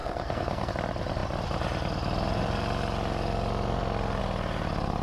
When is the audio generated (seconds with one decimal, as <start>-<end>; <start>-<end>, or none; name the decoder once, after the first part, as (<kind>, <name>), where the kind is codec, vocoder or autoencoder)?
0.0-0.7 (codec, SNAC)